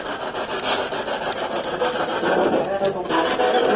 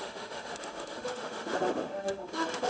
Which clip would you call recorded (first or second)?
first